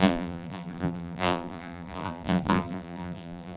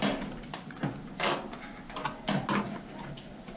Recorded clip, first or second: second